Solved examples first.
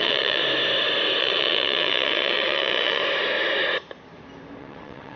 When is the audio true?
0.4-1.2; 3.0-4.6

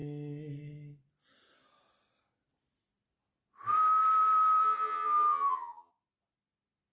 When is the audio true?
0.0-4.6; 5.9-6.9

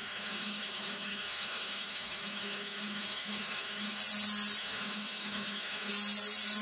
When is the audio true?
4.0-4.6; 5.9-6.6

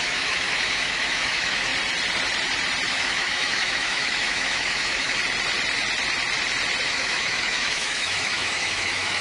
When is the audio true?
1.7-2.9; 5.2-6.9